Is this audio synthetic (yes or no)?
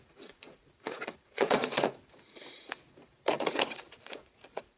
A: yes